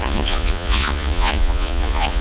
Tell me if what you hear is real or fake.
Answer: fake